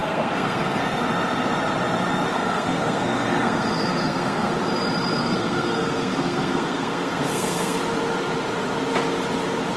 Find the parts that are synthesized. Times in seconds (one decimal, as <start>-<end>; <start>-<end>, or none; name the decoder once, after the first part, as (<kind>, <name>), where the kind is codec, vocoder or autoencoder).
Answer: 0.0-0.8 (codec, SNAC); 2.3-4.5; 5.2-7.8